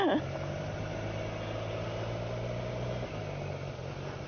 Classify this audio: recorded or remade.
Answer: recorded